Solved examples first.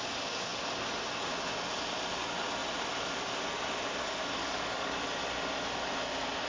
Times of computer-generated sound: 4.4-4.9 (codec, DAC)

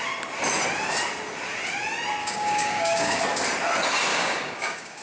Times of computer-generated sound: 2.2-3.2 (codec, DAC); 4.1-5.0

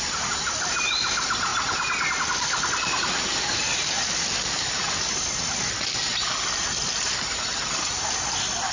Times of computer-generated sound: none